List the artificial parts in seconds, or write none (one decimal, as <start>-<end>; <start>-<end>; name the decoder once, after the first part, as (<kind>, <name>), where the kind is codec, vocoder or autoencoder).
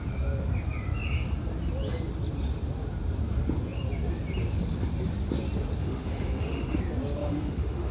5.8-6.8 (autoencoder, DAC-VAE); 7.2-7.9